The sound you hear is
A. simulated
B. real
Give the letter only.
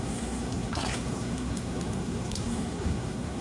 A